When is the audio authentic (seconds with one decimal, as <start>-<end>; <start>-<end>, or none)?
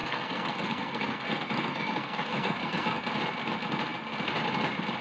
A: 3.0-5.0